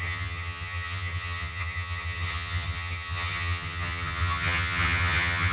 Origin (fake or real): fake